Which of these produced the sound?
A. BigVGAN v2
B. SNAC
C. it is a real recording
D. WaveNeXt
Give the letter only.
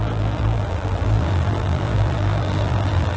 A